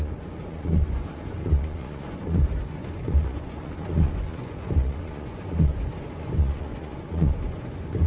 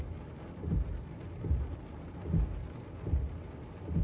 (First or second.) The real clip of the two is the second